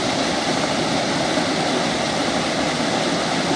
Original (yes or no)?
yes